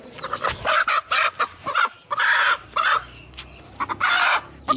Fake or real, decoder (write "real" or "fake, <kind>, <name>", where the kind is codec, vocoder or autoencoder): real